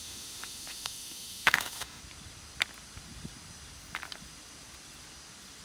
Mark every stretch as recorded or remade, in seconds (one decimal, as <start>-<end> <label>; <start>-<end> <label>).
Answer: 0.0-2.0 remade; 2.0-5.6 recorded